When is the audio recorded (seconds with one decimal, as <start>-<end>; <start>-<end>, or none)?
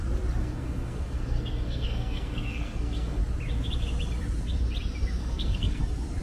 0.0-0.4; 3.2-5.2; 5.8-6.2